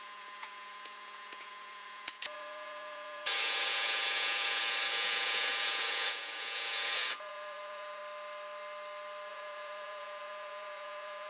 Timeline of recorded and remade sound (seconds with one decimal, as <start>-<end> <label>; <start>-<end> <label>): 0.0-8.0 remade; 8.0-9.3 recorded; 9.3-11.3 remade